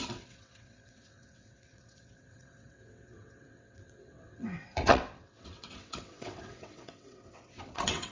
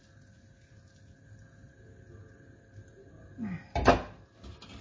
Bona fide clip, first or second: second